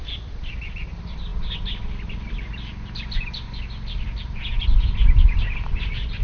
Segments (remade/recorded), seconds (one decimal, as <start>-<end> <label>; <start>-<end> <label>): 0.0-6.2 recorded